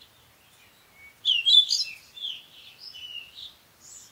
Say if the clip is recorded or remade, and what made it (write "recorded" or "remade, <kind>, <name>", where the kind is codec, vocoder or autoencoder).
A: recorded